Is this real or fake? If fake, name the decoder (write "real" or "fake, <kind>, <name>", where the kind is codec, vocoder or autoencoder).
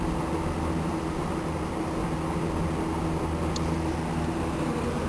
real